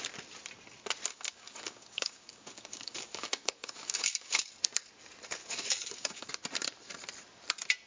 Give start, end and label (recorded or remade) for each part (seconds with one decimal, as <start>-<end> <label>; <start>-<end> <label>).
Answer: 0.0-1.1 recorded; 1.1-4.5 remade; 4.5-5.4 recorded; 5.4-6.3 remade; 6.3-7.9 recorded